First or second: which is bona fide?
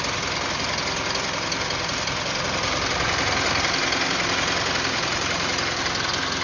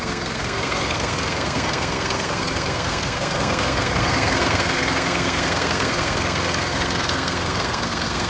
first